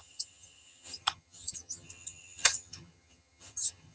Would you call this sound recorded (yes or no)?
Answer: no